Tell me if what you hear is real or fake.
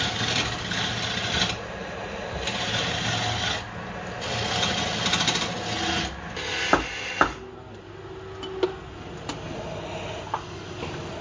real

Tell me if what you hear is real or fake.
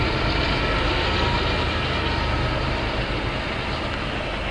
real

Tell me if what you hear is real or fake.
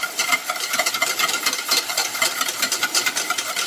real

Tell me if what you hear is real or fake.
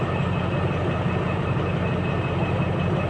real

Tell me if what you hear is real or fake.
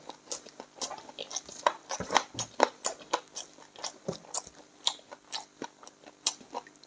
real